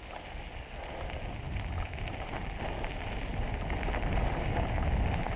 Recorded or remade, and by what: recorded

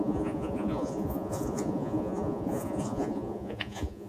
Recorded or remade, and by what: remade, vocoder, Vocos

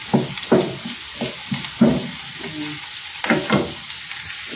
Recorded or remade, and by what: recorded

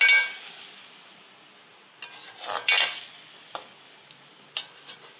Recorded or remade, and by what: recorded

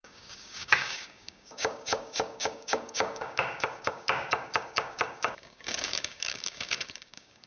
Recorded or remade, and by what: remade, codec, DAC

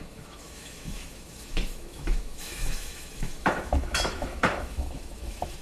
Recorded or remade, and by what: remade, autoencoder, DAC-VAE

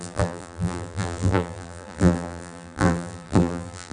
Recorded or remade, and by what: remade, vocoder, BigVGAN v2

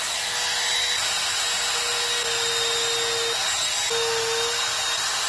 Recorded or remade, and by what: recorded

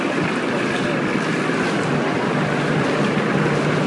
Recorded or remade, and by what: recorded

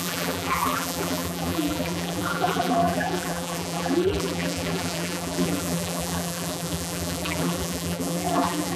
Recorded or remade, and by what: remade, vocoder, BigVGAN v2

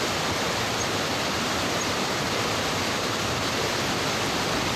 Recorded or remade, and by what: remade, vocoder, BigVGAN v2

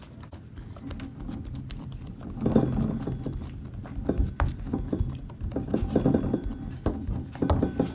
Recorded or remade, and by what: recorded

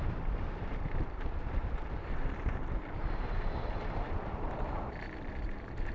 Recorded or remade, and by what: remade, vocoder, BigVGAN v2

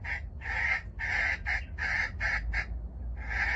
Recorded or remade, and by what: recorded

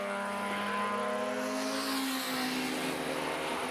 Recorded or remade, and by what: recorded